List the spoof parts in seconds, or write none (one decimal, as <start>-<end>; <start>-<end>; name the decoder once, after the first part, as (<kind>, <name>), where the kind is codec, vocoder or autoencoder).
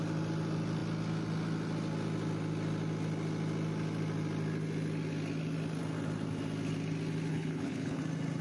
7.3-8.0 (codec, HILCodec)